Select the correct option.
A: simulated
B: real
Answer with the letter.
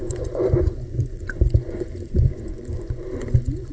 A